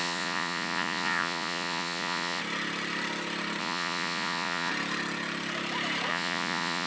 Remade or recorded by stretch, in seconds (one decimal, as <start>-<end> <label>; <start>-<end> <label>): 0.0-2.4 remade; 2.4-3.6 recorded; 3.6-4.7 remade; 4.7-6.1 recorded; 6.1-6.9 remade